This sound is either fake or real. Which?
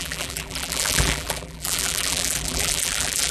fake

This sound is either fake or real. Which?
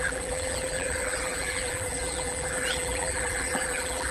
fake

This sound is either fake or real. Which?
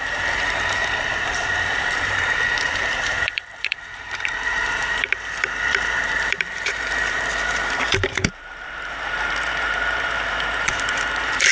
fake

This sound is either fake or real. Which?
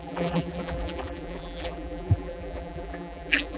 fake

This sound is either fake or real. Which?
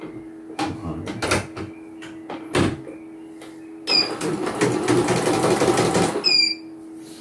real